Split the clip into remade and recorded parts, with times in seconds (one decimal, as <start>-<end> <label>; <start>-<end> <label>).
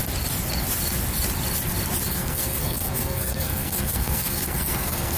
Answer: 0.0-2.1 recorded; 2.1-5.2 remade